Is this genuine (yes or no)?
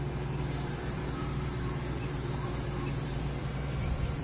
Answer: no